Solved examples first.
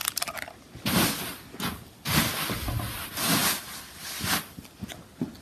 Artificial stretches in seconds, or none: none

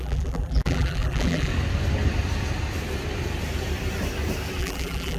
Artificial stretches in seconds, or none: 0.0-1.5; 4.6-5.2

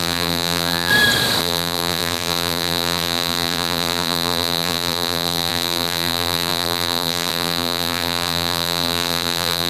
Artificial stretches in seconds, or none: 0.0-0.9; 1.4-9.7

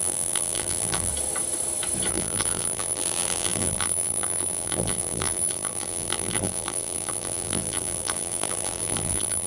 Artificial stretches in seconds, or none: 0.0-1.1; 2.1-9.5

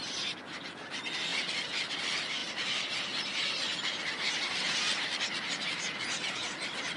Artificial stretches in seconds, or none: 1.3-2.0

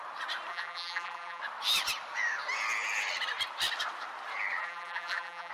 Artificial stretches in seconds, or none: 0.5-1.4; 4.6-5.5

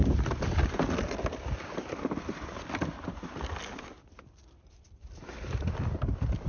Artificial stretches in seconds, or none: 0.0-2.6